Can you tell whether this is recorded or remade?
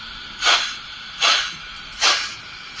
remade